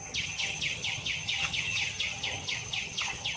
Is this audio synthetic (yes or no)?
yes